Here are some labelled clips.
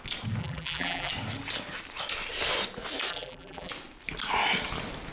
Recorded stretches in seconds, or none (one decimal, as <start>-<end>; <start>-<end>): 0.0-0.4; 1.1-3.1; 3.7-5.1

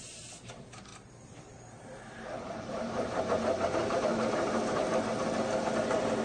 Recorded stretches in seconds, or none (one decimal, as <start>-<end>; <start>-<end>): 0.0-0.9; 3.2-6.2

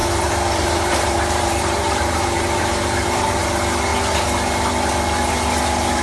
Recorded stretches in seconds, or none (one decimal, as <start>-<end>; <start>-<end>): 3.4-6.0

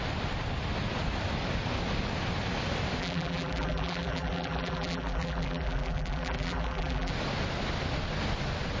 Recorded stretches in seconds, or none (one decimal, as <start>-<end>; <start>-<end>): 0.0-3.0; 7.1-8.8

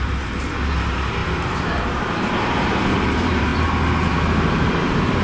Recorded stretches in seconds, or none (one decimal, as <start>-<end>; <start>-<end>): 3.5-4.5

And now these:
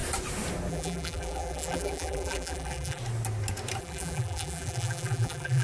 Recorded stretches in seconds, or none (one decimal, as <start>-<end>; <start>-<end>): 0.0-0.7; 3.0-3.8